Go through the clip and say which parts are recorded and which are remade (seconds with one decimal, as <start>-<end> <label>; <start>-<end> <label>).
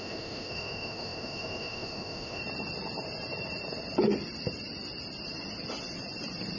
0.0-2.4 remade; 2.4-6.6 recorded